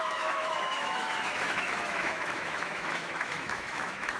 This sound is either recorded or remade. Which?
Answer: remade